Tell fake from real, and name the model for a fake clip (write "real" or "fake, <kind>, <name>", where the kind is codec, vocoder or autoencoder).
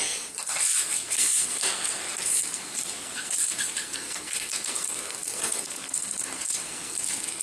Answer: fake, codec, SNAC